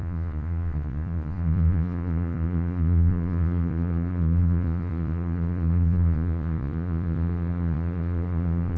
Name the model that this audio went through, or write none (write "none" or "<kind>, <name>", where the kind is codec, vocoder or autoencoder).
vocoder, Vocos